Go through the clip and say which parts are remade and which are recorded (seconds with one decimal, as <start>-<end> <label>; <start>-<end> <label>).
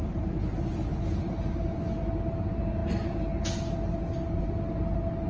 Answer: 0.0-5.3 recorded